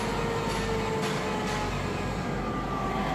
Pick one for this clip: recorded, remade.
recorded